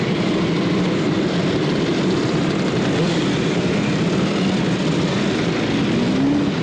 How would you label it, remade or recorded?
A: remade